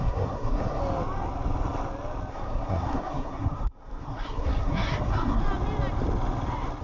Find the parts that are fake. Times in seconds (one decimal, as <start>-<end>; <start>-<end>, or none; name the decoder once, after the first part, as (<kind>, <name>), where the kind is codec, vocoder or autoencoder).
0.0-0.8 (codec, SNAC); 2.3-5.4